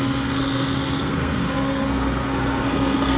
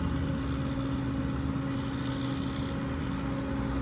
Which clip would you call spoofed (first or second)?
first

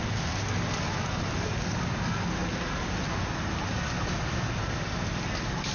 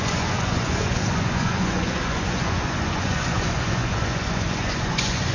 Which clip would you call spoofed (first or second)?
second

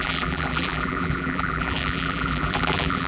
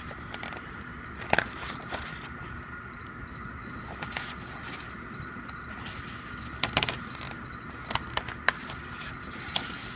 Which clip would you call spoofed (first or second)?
first